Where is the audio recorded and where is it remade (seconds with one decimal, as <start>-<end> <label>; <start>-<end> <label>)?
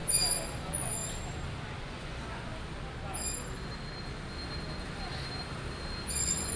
0.0-0.6 recorded; 0.6-1.0 remade; 1.0-1.8 recorded; 1.8-2.5 remade; 2.5-6.1 recorded; 6.1-6.6 remade